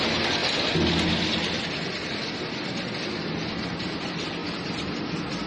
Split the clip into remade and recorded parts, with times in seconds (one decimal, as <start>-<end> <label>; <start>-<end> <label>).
0.0-5.5 recorded